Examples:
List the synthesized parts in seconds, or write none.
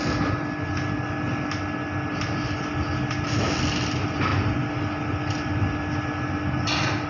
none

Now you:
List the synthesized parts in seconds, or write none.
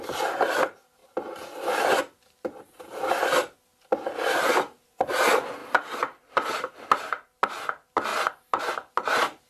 5.6-6.7 (vocoder, BigVGAN v2)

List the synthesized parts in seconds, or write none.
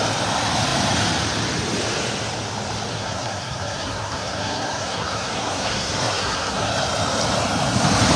2.9-6.7 (codec, SNAC)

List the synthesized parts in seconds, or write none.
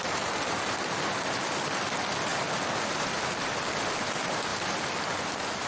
none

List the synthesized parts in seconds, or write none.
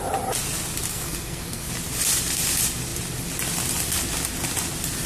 0.9-1.7 (codec, SNAC)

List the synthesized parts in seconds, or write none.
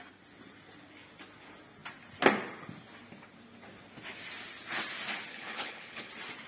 5.3-6.1 (codec, HILCodec)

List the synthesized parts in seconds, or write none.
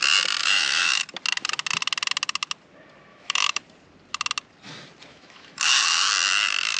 0.4-1.0 (autoencoder, DAC-VAE); 3.1-3.6; 5.1-6.1